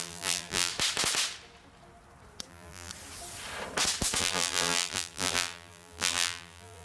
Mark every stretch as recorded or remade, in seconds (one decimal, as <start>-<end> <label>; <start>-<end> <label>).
0.0-0.7 remade; 0.7-2.5 recorded; 2.5-2.9 remade; 2.9-4.2 recorded; 4.2-6.8 remade